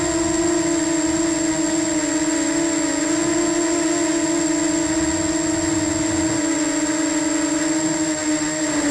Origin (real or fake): real